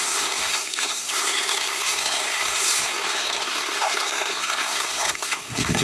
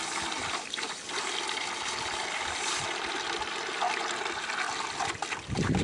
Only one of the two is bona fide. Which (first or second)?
second